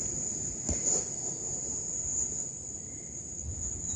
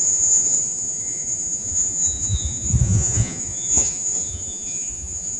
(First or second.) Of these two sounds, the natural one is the first